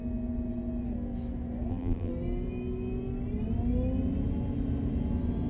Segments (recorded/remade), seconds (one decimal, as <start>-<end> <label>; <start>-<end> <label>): 0.0-1.7 recorded; 1.7-2.1 remade; 2.1-5.5 recorded